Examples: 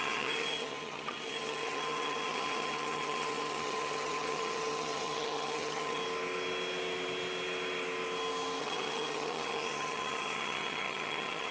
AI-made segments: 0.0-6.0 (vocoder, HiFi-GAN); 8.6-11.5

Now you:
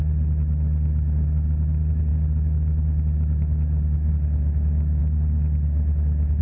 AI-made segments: none

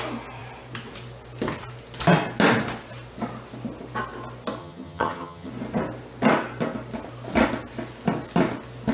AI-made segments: 4.6-5.5 (vocoder, HiFi-GAN)

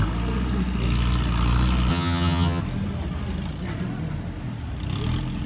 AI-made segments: 1.9-2.6 (vocoder, HiFi-GAN)

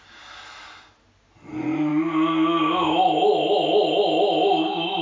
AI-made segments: none

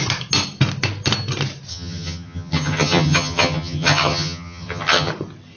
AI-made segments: 1.7-5.1 (vocoder, HiFi-GAN)

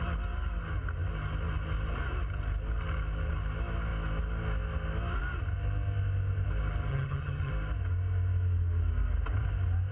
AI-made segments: 6.9-7.5 (vocoder, HiFi-GAN)